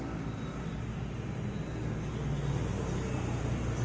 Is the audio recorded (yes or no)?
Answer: yes